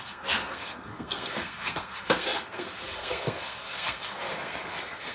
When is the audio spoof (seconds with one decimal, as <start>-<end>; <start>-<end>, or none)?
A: 0.0-5.1